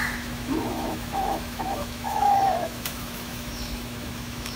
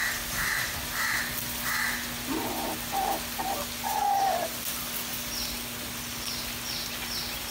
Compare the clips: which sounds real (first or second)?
second